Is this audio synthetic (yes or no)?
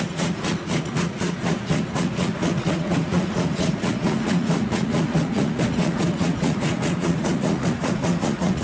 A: yes